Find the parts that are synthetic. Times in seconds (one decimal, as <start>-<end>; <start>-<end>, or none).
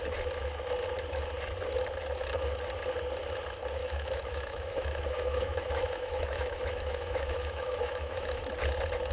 3.8-8.4